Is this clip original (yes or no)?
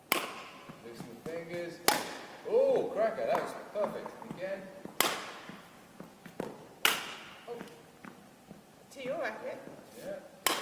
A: yes